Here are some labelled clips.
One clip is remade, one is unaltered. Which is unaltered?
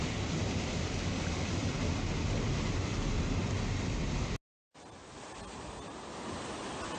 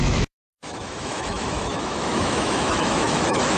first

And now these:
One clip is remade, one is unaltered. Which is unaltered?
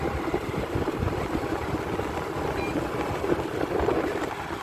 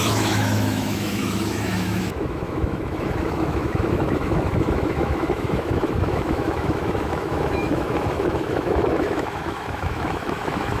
first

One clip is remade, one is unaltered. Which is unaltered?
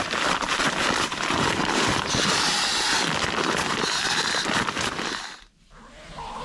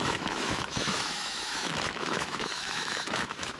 first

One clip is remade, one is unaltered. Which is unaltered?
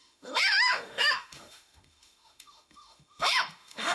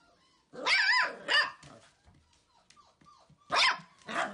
second